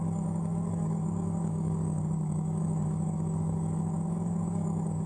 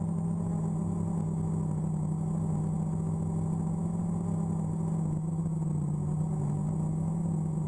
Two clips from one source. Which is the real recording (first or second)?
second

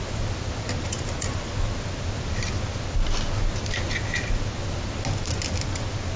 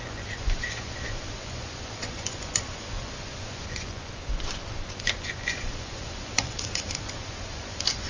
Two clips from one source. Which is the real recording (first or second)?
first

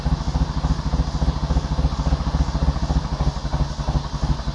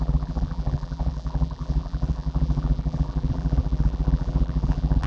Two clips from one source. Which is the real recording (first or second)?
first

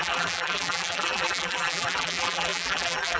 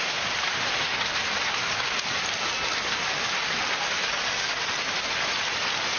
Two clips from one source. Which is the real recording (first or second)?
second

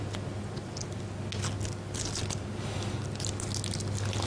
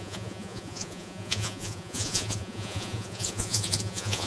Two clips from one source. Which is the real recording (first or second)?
first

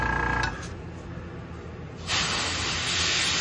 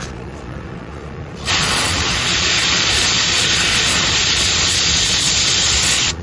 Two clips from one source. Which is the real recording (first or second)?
first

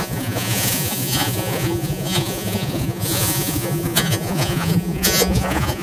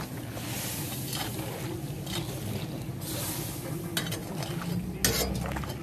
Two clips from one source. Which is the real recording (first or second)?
second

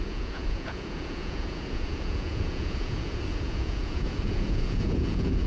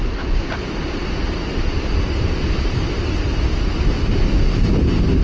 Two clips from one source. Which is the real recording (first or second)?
second